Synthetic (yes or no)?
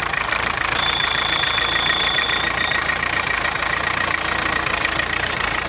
yes